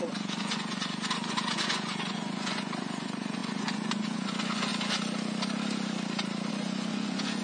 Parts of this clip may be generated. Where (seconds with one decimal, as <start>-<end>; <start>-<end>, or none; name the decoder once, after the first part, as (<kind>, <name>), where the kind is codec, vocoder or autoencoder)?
0.0-4.7 (vocoder, Vocos); 6.5-7.4